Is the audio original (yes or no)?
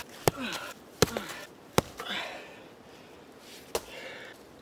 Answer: yes